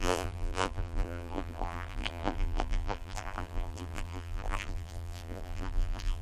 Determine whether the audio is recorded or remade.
remade